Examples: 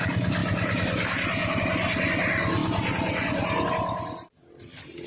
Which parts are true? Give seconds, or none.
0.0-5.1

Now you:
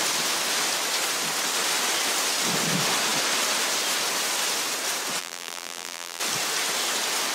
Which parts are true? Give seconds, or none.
0.0-5.2; 6.2-7.3

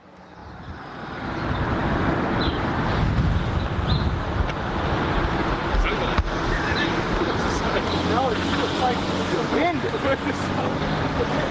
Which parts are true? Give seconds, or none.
0.0-0.4; 1.3-1.8; 3.0-11.5

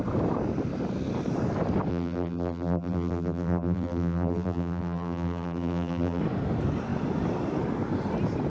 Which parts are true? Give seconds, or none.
0.0-1.9; 6.2-8.5

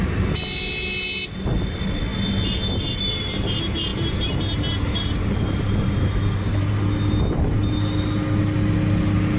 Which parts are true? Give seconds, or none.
0.0-3.9; 6.7-9.4

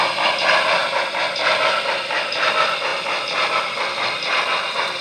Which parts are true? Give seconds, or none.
2.9-3.6